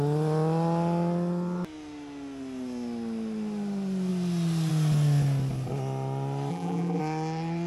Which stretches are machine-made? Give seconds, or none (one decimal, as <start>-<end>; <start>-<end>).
6.5-7.0